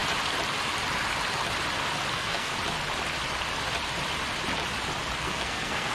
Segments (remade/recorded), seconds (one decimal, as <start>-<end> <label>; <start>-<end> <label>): 0.0-2.1 recorded; 2.1-2.5 remade; 2.5-5.2 recorded; 5.2-5.9 remade